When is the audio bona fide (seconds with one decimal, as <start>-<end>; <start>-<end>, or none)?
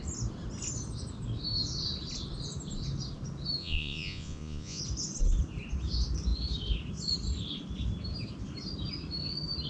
0.0-3.6; 4.8-9.7